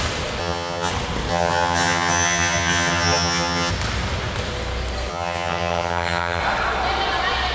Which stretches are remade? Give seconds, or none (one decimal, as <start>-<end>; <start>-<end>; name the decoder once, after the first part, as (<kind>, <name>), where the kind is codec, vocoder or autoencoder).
0.4-0.9 (vocoder, HiFi-GAN); 1.3-3.7; 5.1-6.4